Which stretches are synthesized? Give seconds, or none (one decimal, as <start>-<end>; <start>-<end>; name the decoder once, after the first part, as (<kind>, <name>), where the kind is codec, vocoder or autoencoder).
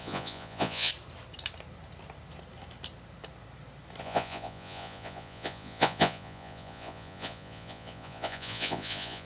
0.0-0.9 (vocoder, Vocos); 4.0-9.3